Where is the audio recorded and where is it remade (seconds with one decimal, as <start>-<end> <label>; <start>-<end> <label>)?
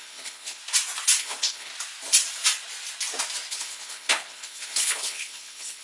0.0-0.6 remade; 0.6-1.2 recorded; 1.2-1.7 remade; 1.7-3.5 recorded; 3.5-5.8 remade